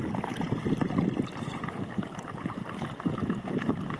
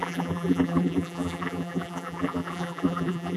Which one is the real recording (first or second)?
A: first